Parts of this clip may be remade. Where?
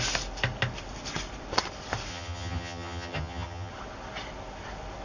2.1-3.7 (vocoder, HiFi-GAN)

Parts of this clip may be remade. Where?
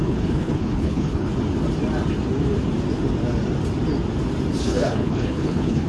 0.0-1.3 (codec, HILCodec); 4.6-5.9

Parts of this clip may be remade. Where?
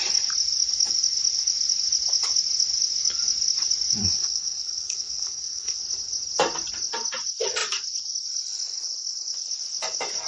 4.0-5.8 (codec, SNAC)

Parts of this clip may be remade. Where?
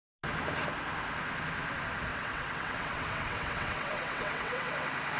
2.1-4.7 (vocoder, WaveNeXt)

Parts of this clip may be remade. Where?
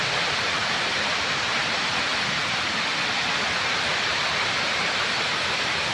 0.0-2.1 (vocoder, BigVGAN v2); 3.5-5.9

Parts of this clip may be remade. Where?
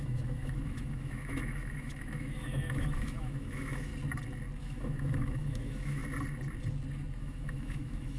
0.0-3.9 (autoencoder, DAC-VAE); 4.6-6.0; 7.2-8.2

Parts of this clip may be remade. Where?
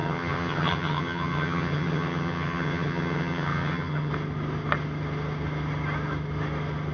0.0-4.1 (vocoder, HiFi-GAN)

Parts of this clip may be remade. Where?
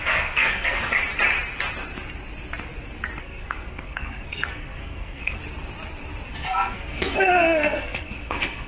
0.0-1.0 (codec, SNAC); 3.2-5.4; 6.3-8.7